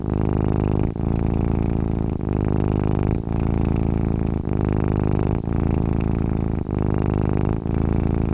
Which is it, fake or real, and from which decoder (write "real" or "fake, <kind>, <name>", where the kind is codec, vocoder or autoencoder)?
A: real